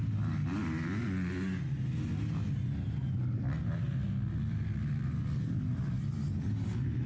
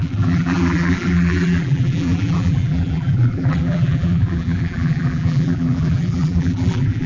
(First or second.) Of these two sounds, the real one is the first